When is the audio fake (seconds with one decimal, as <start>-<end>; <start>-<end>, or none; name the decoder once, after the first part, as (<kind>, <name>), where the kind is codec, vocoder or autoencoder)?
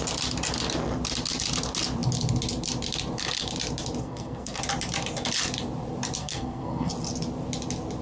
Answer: 4.0-4.6 (codec, SNAC); 6.2-6.9